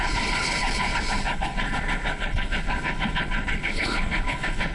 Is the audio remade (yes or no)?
yes